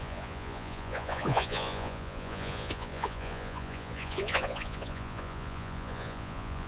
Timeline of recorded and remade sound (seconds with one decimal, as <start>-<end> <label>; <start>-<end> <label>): 0.0-6.7 remade